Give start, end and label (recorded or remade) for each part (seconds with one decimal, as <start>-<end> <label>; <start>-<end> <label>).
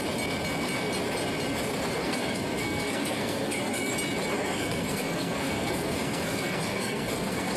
0.0-2.0 recorded; 2.0-3.9 remade; 3.9-4.3 recorded; 4.3-7.6 remade